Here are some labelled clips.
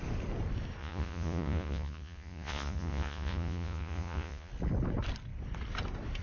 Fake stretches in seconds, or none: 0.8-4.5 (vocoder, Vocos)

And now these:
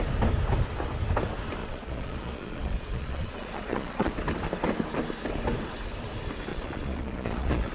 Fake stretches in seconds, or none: 1.6-4.1 (vocoder, Vocos); 6.5-7.7

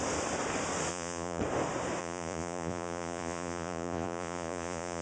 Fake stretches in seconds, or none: 0.9-1.4 (vocoder, Vocos); 2.0-5.0